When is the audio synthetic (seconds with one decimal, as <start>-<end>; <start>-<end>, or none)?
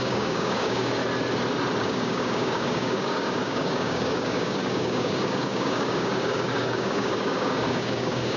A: 0.0-1.0; 1.8-8.4